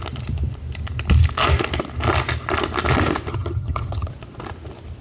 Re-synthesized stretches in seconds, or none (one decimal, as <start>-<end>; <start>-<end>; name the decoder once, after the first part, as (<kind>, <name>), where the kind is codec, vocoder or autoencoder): 3.3-4.1 (vocoder, HiFi-GAN)